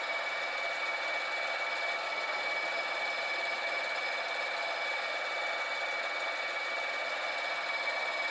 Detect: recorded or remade recorded